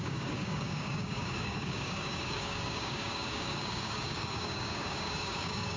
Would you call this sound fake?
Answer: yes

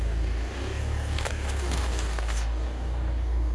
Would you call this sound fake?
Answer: yes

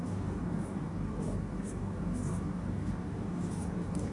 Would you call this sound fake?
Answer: yes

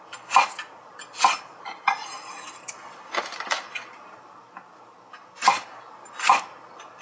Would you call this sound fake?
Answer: no